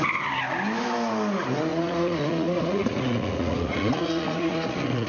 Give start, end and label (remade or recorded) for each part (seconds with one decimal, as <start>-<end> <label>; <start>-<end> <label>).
0.0-1.7 recorded; 1.7-5.1 remade